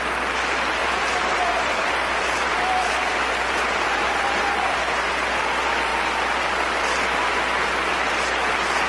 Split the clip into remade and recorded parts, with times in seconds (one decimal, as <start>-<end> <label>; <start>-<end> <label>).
0.0-0.8 recorded; 0.8-4.8 remade; 4.8-8.9 recorded